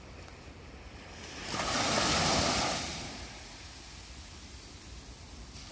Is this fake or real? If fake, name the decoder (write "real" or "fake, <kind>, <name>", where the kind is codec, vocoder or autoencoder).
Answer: real